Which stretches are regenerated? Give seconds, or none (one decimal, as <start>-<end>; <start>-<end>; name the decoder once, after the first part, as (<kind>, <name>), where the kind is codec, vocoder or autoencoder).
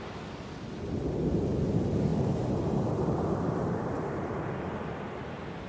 none